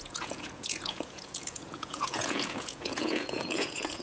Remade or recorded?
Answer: remade